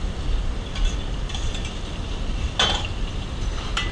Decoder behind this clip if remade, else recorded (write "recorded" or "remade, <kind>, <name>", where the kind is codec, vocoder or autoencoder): recorded